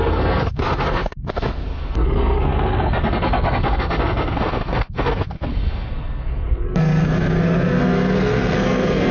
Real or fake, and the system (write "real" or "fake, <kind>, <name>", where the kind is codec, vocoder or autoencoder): fake, codec, SNAC